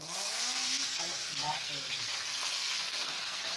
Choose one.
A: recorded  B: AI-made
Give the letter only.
B